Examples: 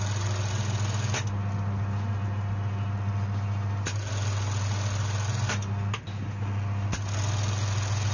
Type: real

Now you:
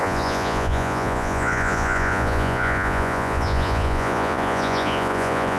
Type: fake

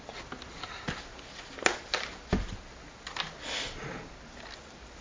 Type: real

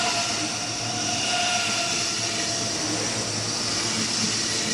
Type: real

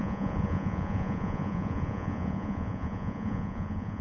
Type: fake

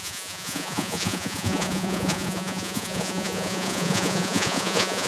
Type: fake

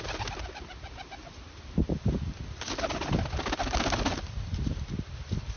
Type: real